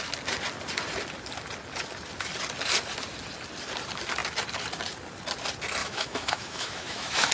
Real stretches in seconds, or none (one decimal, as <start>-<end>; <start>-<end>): 0.0-5.8